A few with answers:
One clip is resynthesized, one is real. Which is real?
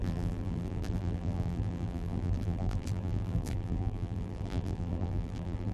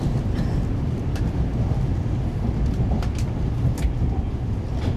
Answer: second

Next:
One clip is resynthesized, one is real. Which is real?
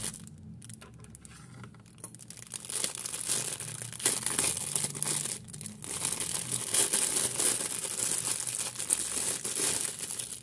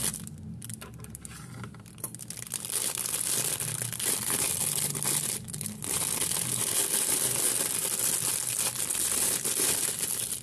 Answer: first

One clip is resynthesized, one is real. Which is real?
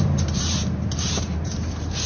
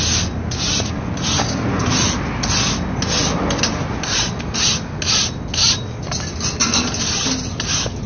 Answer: second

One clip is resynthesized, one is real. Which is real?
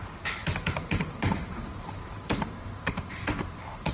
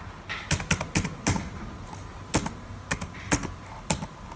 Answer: second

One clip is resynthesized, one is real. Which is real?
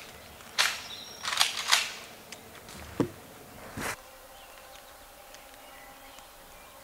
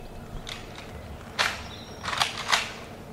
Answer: second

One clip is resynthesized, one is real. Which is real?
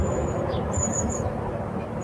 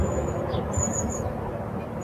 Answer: second